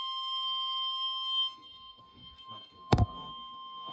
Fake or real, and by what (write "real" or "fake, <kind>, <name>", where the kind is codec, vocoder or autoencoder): fake, codec, SNAC